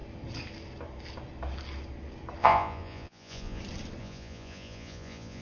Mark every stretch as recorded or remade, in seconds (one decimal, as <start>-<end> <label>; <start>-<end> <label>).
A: 0.0-2.4 recorded; 2.4-3.6 remade; 3.6-4.0 recorded; 4.0-5.4 remade